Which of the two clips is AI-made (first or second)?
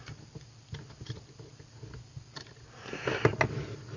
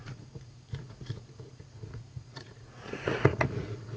second